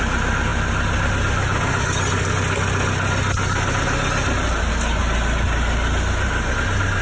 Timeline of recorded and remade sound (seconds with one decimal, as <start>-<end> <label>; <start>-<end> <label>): 0.0-7.0 recorded